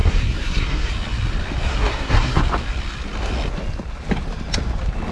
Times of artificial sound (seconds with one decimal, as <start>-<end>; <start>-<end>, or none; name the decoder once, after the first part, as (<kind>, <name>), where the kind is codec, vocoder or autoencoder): 0.0-0.9 (codec, SNAC); 1.7-2.4